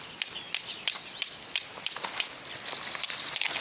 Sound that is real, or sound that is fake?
real